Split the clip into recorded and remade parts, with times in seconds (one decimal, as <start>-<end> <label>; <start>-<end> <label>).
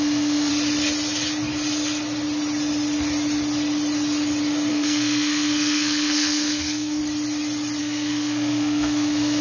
0.0-0.5 remade; 0.5-4.7 recorded; 4.7-7.0 remade; 7.0-7.8 recorded; 7.8-9.4 remade